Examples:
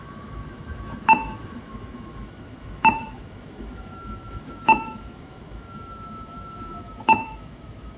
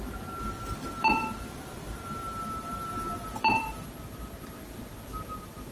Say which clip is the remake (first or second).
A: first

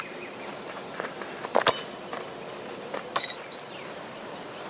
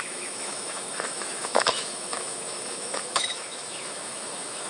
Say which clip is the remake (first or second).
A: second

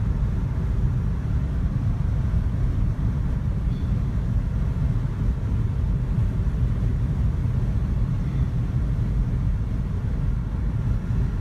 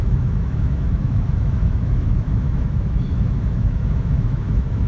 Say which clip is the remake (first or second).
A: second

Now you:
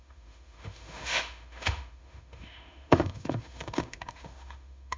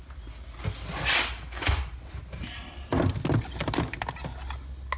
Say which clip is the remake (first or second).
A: first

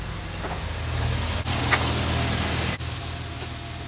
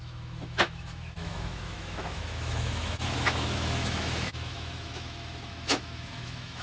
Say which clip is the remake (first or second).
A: second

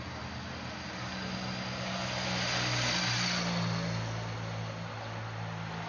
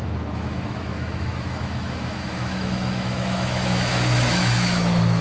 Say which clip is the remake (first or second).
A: second